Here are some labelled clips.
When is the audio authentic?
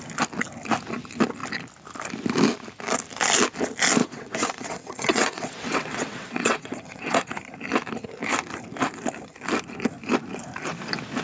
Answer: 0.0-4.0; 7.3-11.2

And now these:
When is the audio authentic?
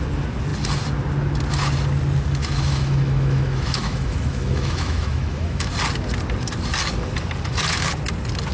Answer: 0.0-2.4; 5.7-8.5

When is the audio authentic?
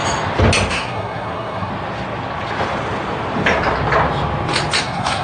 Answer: 0.0-0.7; 1.7-4.8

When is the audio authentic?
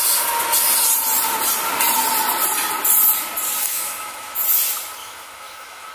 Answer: 0.0-3.6; 4.4-5.0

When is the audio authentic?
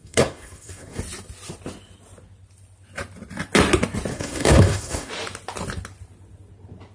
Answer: 1.0-4.1; 5.1-6.9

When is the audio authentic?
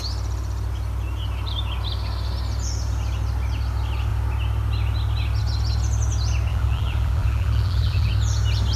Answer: 0.0-6.5; 8.1-8.8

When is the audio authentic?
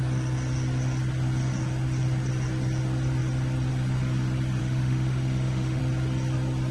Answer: 0.0-4.6; 5.8-6.7